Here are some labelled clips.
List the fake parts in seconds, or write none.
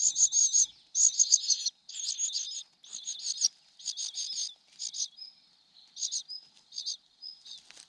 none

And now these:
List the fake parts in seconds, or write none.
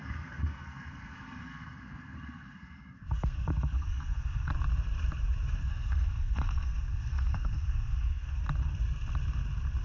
0.0-4.5 (codec, SNAC); 5.6-8.4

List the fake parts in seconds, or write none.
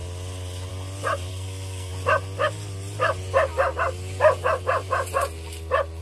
1.3-1.9 (codec, SNAC)